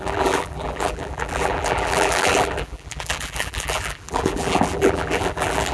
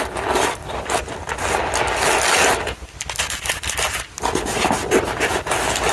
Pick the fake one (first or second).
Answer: first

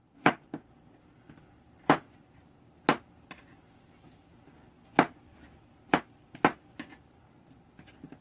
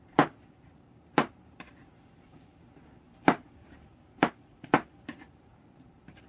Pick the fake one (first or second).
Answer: second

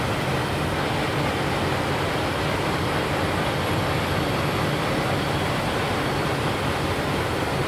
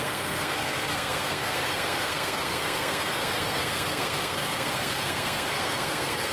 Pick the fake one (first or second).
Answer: second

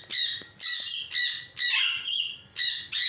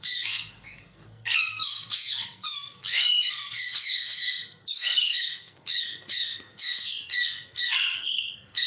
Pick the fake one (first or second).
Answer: second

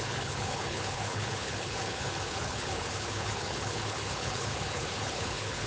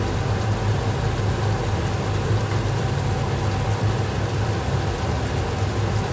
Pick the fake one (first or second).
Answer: first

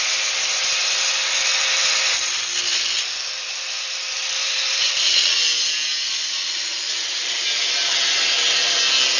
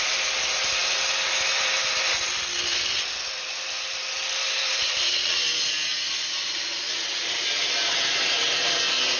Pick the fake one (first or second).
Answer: second